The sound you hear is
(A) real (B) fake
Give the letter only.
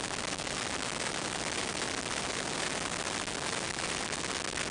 A